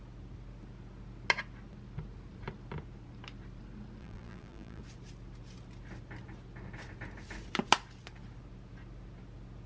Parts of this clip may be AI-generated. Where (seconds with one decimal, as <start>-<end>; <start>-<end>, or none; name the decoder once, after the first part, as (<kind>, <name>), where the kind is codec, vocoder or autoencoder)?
4.0-4.8 (vocoder, BigVGAN v2)